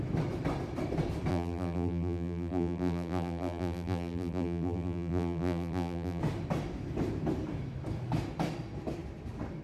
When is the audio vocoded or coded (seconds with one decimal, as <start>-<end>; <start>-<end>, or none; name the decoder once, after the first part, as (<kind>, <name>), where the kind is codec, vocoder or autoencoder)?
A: 1.3-6.2 (vocoder, BigVGAN v2)